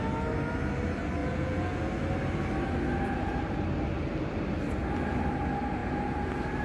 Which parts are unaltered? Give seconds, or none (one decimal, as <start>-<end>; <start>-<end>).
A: 0.0-1.2; 1.8-6.6